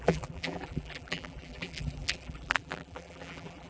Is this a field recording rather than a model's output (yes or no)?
no